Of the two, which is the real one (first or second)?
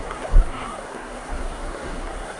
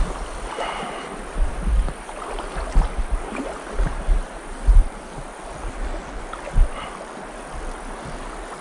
second